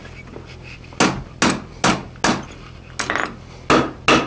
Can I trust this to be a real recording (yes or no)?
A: yes